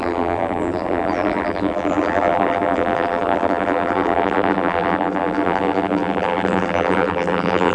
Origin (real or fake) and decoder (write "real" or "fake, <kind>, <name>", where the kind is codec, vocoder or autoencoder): fake, vocoder, BigVGAN v2